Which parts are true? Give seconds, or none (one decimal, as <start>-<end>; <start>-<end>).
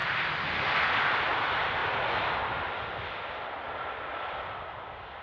0.0-5.2